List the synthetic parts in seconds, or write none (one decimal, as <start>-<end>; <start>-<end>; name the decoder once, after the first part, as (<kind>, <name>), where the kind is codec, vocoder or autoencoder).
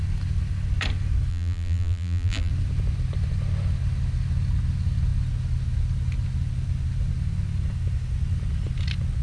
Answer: 1.3-2.5 (vocoder, BigVGAN v2)